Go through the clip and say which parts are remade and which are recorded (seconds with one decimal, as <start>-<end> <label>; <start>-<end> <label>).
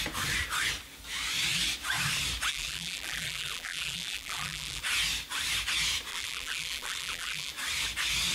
0.0-2.5 recorded; 2.5-4.8 remade; 4.8-6.1 recorded; 6.1-7.5 remade; 7.5-8.3 recorded